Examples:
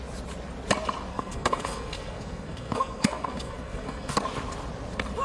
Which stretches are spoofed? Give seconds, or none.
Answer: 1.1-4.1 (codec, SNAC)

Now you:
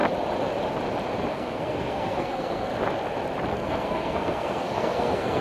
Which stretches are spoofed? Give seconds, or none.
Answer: 1.3-2.7 (codec, SNAC); 3.5-5.4

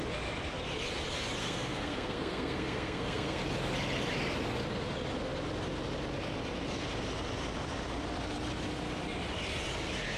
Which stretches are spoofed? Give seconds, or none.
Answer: 1.4-3.4 (codec, SNAC)